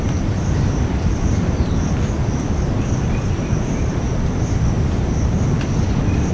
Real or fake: real